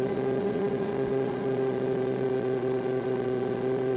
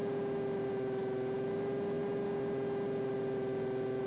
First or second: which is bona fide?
second